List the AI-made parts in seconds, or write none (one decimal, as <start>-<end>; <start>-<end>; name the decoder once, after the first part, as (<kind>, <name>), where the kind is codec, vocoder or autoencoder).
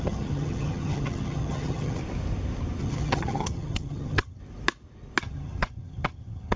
0.0-2.0 (vocoder, HiFi-GAN); 2.8-4.4; 5.2-6.6